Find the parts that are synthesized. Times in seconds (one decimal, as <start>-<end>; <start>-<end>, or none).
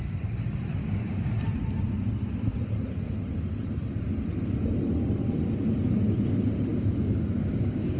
0.8-1.4; 6.7-8.0